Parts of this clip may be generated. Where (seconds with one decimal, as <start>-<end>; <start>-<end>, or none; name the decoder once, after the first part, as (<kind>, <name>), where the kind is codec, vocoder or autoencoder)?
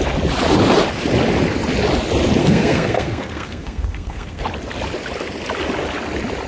2.4-4.4 (codec, SNAC)